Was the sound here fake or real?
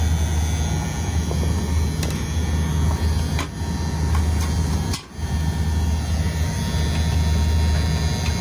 real